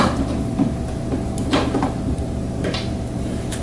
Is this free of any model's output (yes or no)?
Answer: no